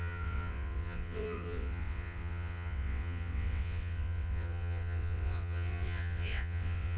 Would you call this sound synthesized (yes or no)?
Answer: yes